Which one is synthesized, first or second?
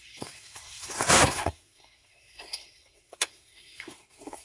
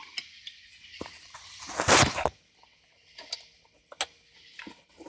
first